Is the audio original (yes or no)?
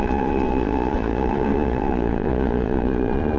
no